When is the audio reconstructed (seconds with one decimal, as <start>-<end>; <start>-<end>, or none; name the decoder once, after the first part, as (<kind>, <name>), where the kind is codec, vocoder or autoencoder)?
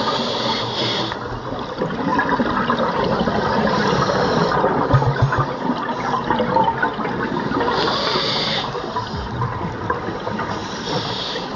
2.1-4.5 (vocoder, BigVGAN v2); 10.6-11.6